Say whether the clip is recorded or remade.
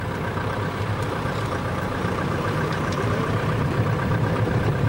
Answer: remade